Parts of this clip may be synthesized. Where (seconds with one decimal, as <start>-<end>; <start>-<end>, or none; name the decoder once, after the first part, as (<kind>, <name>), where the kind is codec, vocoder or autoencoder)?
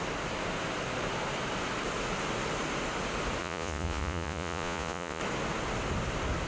3.4-5.2 (vocoder, Vocos)